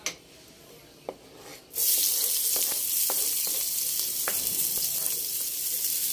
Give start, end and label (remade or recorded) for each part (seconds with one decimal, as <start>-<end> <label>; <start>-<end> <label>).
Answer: 0.0-6.1 recorded